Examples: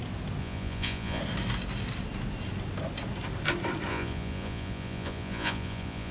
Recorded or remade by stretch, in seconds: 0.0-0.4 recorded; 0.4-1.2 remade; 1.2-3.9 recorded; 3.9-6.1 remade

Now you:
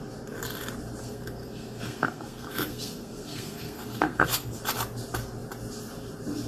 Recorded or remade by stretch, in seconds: 0.0-1.0 recorded; 1.0-4.6 remade; 4.6-6.5 recorded